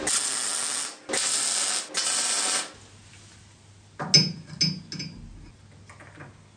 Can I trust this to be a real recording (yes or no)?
yes